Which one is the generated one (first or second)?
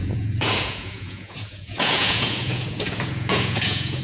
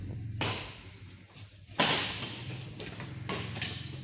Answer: first